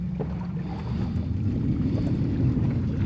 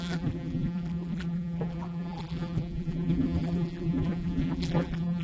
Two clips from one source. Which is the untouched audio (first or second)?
first